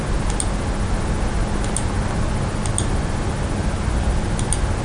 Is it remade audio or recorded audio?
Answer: recorded